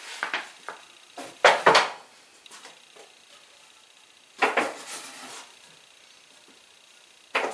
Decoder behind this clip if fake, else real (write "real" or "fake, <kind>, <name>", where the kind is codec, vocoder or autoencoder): real